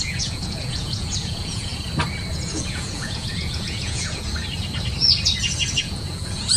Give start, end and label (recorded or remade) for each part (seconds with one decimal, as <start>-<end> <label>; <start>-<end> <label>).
0.0-1.7 remade; 1.7-2.3 recorded; 2.3-4.3 remade; 4.3-5.8 recorded; 5.8-6.6 remade